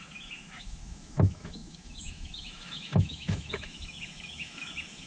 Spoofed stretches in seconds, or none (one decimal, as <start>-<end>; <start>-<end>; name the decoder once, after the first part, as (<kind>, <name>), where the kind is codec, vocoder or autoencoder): 0.0-5.1 (autoencoder, DAC-VAE)